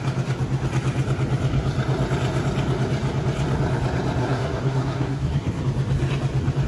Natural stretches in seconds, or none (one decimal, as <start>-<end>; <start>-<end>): 0.0-4.2; 5.6-6.7